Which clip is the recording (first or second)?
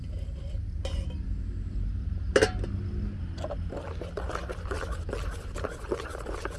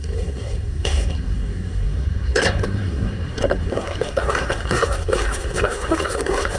first